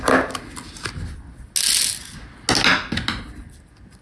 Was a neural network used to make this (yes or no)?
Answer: no